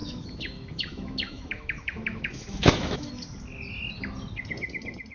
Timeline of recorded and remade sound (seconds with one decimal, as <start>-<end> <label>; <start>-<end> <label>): 0.0-3.1 remade; 3.1-5.1 recorded

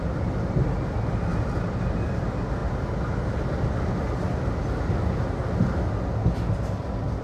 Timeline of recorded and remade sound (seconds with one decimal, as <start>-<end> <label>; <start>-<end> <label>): 0.0-7.2 recorded

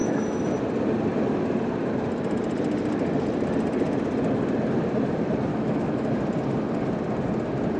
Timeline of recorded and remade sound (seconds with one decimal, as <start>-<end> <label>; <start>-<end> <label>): 0.0-0.5 remade; 0.5-5.5 recorded; 5.5-6.1 remade; 6.1-7.8 recorded

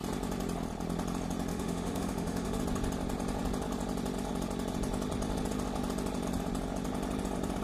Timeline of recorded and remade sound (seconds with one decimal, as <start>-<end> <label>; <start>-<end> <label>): 0.0-1.5 recorded; 1.5-2.6 remade; 2.6-7.6 recorded

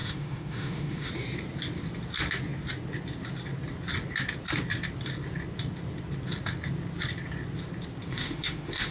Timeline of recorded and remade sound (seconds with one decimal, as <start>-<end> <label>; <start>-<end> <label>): 0.0-1.1 remade; 1.1-8.1 recorded; 8.1-8.9 remade

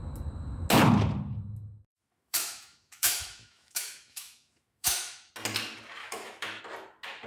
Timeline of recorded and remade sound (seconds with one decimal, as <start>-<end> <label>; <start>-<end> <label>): 0.0-1.9 recorded; 1.9-5.3 remade; 5.3-6.0 recorded; 6.0-6.6 remade; 6.6-7.3 recorded